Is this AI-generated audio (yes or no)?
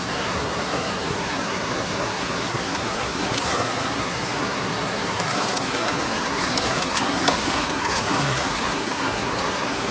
yes